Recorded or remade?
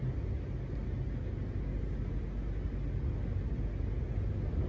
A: recorded